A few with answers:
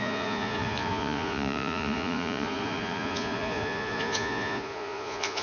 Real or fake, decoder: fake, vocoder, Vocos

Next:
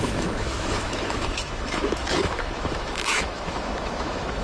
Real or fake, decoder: fake, autoencoder, DAC-VAE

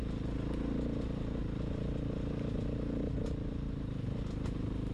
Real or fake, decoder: real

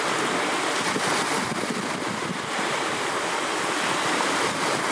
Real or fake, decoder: real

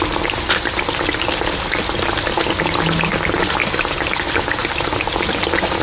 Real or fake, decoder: real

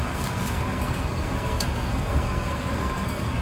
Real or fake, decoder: fake, codec, SNAC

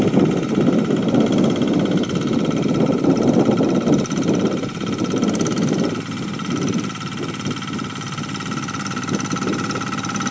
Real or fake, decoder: real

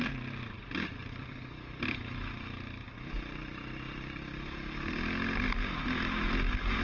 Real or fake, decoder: real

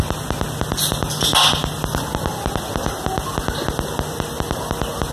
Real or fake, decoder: real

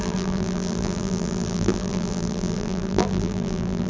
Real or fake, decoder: fake, vocoder, BigVGAN v2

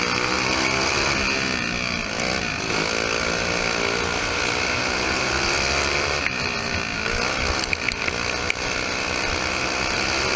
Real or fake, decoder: real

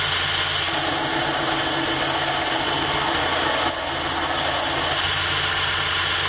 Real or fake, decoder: real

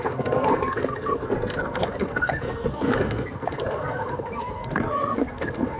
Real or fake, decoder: fake, codec, SNAC